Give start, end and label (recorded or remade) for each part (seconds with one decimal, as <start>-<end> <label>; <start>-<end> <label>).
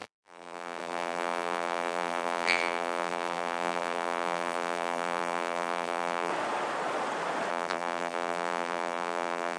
0.0-6.3 remade; 6.3-7.5 recorded; 7.5-9.6 remade